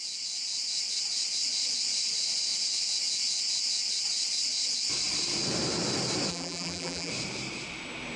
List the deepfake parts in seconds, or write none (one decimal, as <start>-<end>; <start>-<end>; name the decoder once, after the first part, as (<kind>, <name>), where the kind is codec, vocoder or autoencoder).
6.3-7.1 (vocoder, BigVGAN v2)